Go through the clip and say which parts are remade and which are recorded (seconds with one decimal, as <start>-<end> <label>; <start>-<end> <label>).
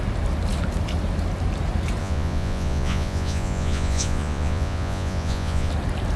0.0-2.0 recorded; 2.0-5.7 remade; 5.7-6.2 recorded